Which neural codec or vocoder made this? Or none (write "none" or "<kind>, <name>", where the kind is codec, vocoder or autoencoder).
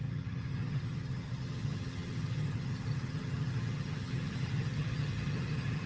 vocoder, HiFi-GAN